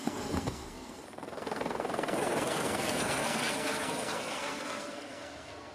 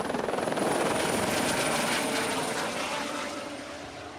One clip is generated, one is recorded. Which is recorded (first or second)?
second